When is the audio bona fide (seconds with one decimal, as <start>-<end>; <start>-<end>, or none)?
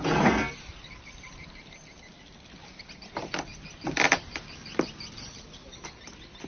0.0-6.5